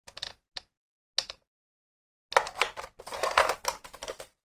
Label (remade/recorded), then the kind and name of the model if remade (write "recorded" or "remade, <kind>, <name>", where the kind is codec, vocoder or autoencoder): recorded